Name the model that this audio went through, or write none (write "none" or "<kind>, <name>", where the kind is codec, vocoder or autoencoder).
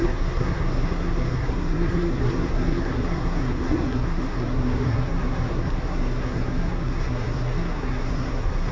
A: codec, SNAC